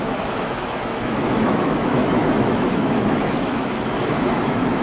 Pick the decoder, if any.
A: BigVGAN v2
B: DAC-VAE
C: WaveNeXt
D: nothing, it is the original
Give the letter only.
B